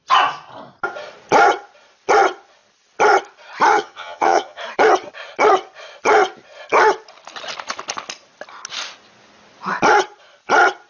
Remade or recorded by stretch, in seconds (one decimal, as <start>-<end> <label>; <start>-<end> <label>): 0.0-3.7 recorded; 3.7-4.6 remade; 4.6-10.9 recorded